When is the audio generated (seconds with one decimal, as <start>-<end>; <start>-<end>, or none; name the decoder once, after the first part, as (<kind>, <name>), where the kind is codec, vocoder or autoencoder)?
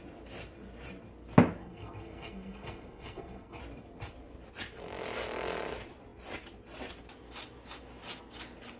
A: 1.6-3.6 (codec, SNAC)